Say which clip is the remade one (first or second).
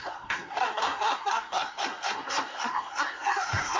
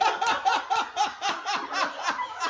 first